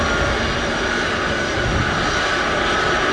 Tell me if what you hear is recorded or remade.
recorded